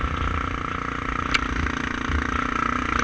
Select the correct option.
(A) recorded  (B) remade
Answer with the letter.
A